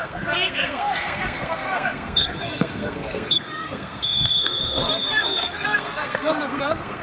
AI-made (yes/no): yes